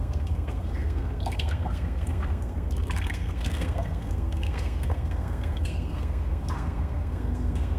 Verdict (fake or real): fake